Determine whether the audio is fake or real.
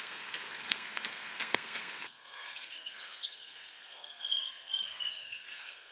fake